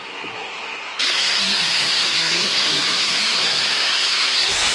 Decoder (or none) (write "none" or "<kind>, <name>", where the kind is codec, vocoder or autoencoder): codec, SNAC